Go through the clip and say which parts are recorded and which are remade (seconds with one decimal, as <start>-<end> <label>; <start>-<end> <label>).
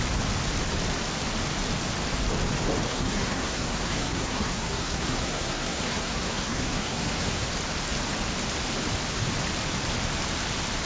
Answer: 0.0-2.9 recorded; 2.9-7.5 remade; 7.5-10.9 recorded